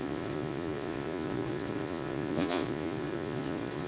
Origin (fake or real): fake